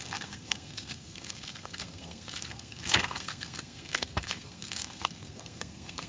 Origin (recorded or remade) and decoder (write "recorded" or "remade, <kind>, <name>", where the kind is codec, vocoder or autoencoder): remade, codec, SNAC